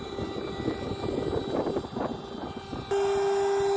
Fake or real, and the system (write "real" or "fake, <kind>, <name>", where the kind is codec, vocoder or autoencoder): real